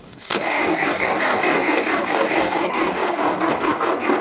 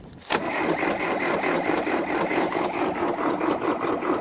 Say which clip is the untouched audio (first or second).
second